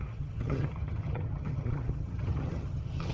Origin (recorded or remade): remade